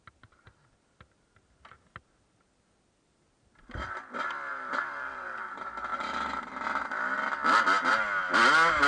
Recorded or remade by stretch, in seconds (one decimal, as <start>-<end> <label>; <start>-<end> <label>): 0.0-4.5 recorded; 4.5-5.5 remade; 5.5-5.9 recorded; 5.9-6.5 remade; 6.5-8.9 recorded